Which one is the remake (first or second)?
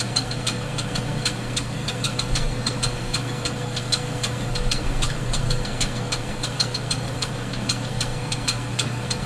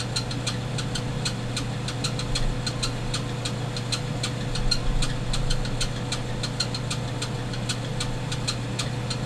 first